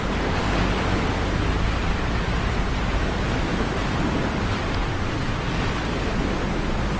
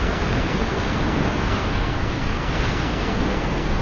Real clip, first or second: first